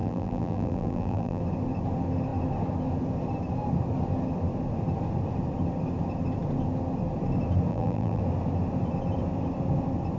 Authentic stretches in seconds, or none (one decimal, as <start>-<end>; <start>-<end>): 1.4-7.7; 8.2-10.2